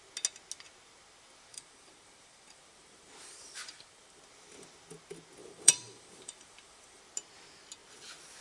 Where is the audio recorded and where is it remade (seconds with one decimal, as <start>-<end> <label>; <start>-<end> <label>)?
0.0-1.5 recorded; 1.5-4.2 remade; 4.2-5.4 recorded; 5.4-7.0 remade; 7.0-8.4 recorded